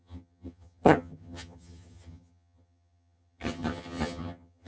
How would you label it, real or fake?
fake